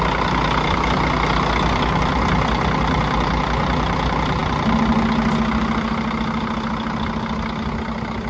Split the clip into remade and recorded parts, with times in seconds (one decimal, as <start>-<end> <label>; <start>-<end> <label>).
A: 0.0-8.3 recorded